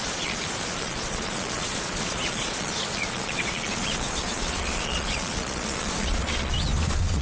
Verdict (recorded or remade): remade